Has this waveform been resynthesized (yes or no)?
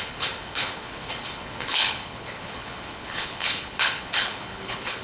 yes